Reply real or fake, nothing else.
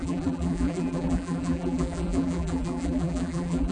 fake